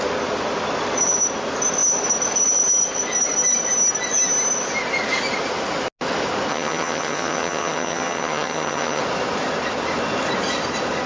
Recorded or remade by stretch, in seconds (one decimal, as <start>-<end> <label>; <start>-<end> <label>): 0.0-6.5 recorded; 6.5-9.0 remade; 9.0-11.1 recorded